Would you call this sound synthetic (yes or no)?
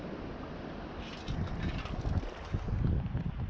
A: no